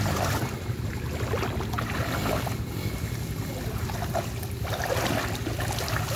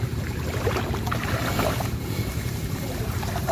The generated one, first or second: second